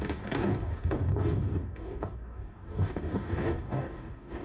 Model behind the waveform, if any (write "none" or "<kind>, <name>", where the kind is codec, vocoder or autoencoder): codec, DAC